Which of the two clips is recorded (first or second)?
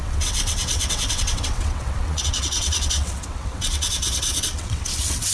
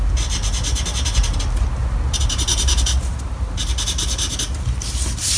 second